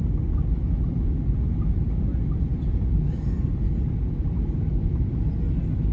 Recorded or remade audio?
recorded